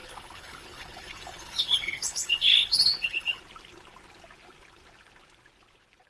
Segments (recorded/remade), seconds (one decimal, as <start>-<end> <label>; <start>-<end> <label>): 0.0-3.4 remade; 3.4-6.1 recorded